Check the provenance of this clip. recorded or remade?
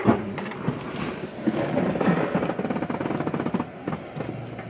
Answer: recorded